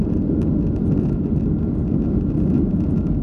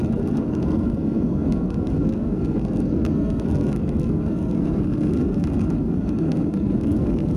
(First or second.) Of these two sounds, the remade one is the second